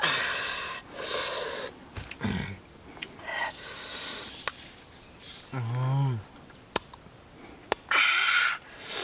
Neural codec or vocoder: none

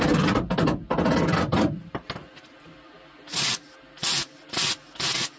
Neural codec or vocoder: none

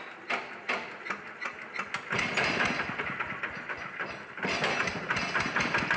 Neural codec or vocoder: none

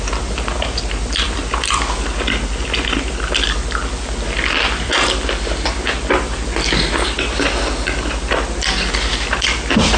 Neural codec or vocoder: none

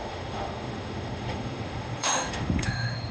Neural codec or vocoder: autoencoder, DAC-VAE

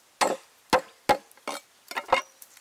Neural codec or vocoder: none